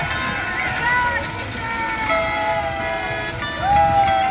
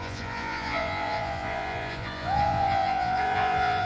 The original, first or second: first